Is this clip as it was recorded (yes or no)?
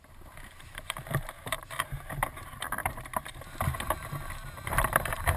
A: no